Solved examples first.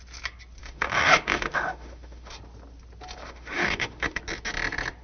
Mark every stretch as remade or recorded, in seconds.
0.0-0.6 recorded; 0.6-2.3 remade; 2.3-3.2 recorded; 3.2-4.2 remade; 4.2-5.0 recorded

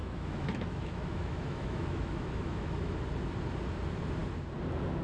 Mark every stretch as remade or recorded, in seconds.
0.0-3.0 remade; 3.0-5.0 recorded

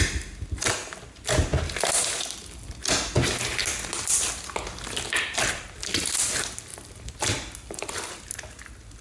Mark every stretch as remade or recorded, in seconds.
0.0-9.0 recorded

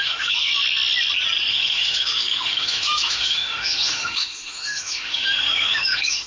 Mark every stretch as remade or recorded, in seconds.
0.0-0.5 remade; 0.5-1.5 recorded; 1.5-6.3 remade

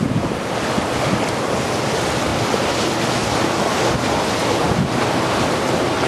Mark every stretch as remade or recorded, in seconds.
0.0-6.1 recorded

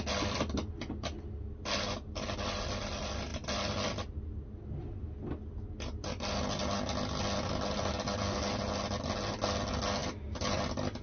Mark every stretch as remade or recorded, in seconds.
0.0-11.0 recorded

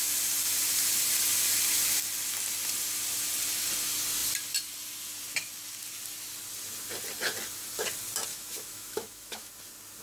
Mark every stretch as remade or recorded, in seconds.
0.0-8.3 recorded; 8.3-9.5 remade; 9.5-10.0 recorded